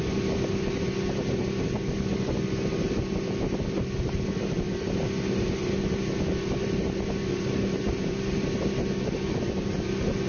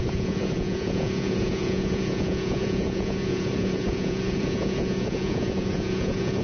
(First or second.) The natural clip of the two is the first